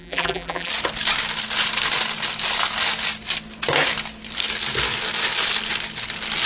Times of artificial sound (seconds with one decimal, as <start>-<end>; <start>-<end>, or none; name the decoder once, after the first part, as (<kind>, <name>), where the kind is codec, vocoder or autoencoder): 0.0-0.7 (vocoder, BigVGAN v2)